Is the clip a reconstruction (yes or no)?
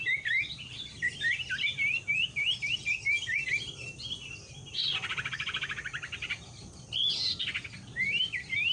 no